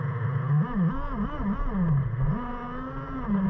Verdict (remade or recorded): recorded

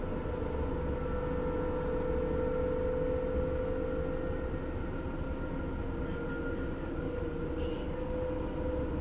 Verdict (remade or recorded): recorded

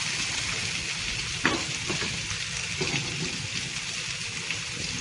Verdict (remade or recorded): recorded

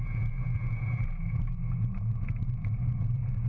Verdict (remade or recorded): remade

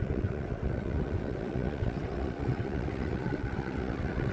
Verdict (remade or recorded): remade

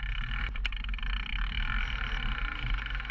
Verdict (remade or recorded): recorded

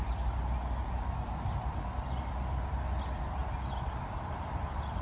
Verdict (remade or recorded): recorded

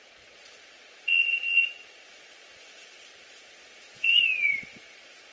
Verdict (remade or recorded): remade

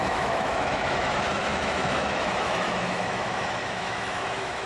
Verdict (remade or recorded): remade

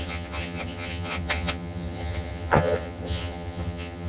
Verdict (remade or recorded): remade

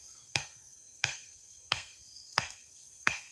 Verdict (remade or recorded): remade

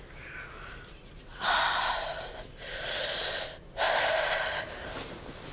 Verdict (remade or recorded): recorded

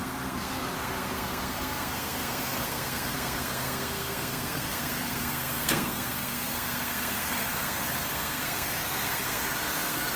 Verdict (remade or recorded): remade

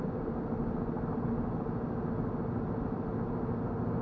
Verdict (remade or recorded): recorded